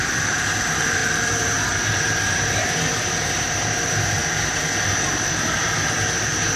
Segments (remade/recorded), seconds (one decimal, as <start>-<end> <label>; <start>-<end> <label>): 0.0-4.2 remade; 4.2-4.9 recorded; 4.9-6.6 remade

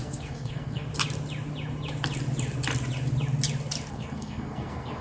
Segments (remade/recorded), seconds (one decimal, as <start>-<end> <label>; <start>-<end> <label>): 0.0-0.9 remade; 0.9-3.9 recorded; 3.9-5.0 remade

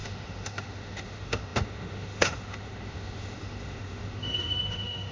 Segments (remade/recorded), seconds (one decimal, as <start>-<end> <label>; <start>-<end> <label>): 0.0-5.1 remade